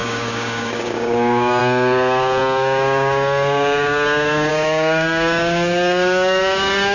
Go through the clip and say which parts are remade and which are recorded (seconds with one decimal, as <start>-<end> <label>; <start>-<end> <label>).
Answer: 0.0-6.9 remade